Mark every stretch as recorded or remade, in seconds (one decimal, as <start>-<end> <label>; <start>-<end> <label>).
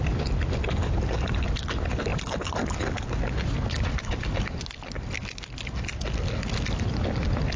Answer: 0.0-7.6 recorded